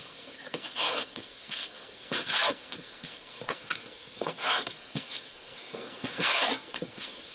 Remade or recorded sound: remade